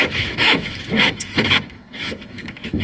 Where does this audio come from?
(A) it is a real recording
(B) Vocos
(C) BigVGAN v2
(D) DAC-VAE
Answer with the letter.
D